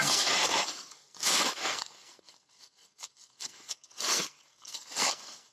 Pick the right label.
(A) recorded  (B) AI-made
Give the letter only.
B